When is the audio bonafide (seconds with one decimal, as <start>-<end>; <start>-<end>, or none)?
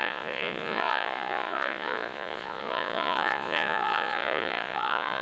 none